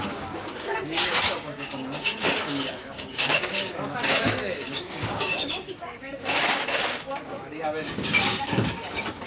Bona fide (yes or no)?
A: no